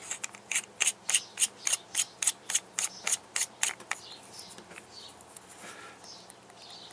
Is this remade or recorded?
remade